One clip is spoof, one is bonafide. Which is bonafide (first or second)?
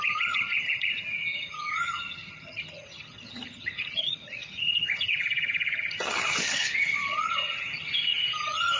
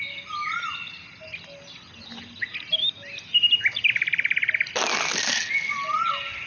second